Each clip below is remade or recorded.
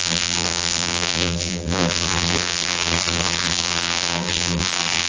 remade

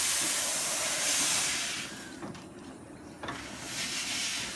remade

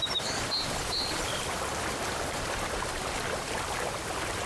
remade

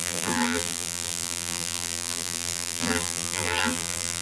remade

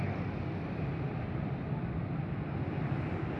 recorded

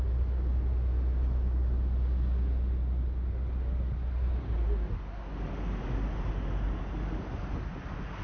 recorded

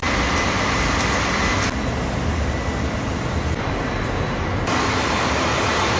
recorded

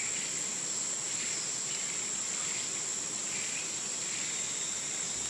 recorded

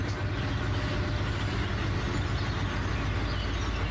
recorded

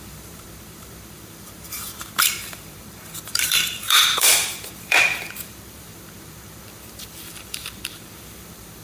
remade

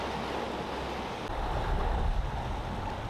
recorded